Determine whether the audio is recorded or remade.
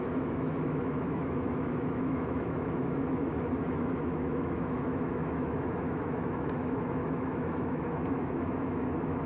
remade